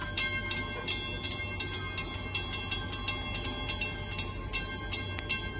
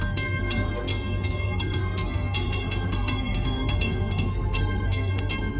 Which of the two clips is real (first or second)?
first